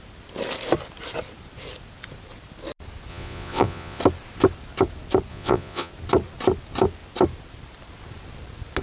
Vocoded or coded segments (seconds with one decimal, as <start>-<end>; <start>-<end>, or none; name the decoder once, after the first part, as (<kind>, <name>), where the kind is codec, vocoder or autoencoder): 3.1-4.0 (vocoder, Vocos); 5.3-5.9